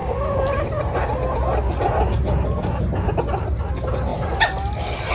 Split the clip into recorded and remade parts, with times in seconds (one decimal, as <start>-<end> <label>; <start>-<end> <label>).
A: 0.0-5.1 recorded